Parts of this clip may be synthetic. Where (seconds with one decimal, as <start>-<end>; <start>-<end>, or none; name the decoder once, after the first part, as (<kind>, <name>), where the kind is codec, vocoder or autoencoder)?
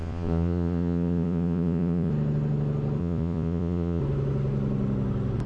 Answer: 0.0-2.1 (vocoder, Vocos); 3.0-4.0